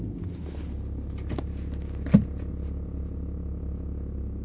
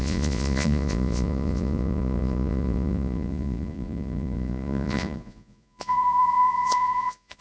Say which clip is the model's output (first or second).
second